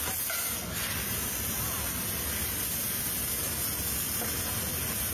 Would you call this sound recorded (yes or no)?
yes